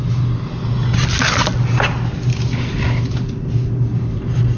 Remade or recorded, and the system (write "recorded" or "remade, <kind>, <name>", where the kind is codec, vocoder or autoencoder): recorded